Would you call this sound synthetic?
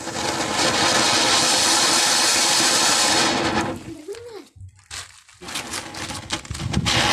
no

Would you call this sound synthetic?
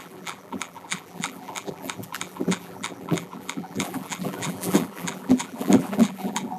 yes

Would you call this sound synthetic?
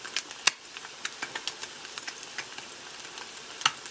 no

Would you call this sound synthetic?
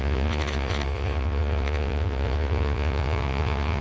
yes